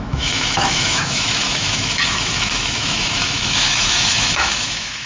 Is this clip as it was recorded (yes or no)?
no